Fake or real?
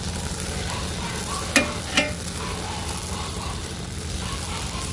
real